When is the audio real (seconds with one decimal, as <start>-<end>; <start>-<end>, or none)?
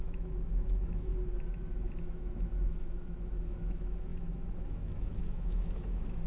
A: 1.1-2.0